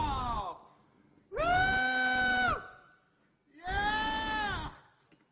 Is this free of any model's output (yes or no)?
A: yes